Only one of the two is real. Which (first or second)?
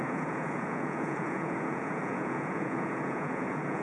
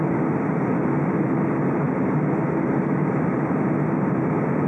second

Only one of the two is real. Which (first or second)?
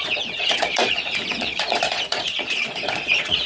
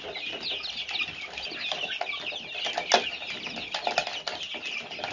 second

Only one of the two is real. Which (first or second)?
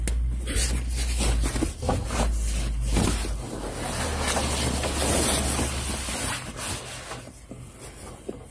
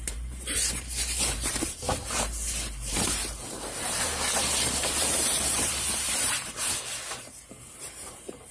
first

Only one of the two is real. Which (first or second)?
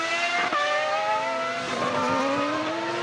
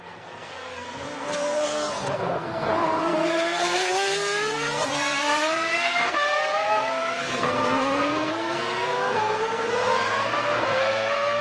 first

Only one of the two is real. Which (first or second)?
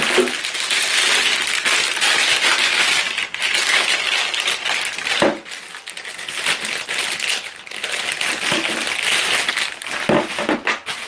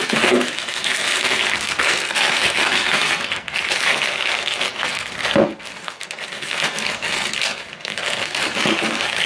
first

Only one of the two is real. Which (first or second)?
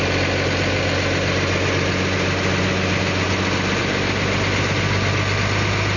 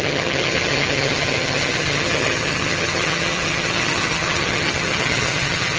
first